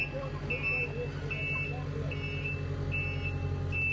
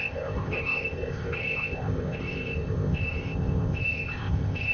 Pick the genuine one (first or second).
first